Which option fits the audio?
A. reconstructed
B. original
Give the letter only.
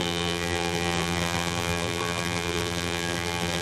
A